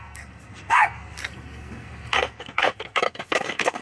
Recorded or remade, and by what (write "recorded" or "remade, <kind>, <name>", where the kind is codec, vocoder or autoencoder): remade, codec, SNAC